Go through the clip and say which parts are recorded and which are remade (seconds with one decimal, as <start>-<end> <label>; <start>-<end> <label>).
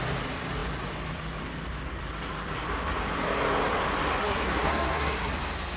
0.0-4.2 recorded; 4.2-5.3 remade; 5.3-5.8 recorded